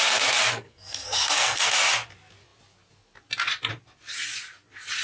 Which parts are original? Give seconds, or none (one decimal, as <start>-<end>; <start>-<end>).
0.0-0.5; 1.7-5.0